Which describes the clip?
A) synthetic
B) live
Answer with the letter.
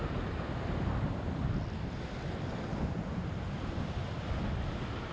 B